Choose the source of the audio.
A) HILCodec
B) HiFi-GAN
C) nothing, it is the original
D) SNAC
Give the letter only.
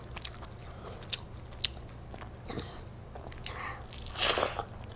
C